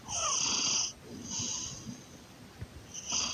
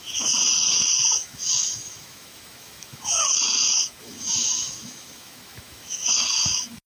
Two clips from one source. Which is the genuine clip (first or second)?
first